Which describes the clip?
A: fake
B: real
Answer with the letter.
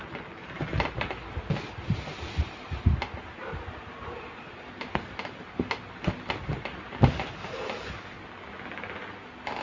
B